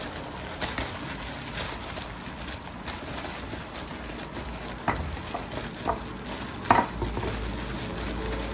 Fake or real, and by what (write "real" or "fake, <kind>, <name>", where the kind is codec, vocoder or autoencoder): real